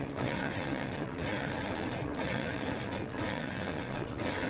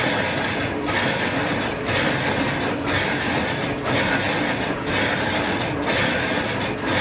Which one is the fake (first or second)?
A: first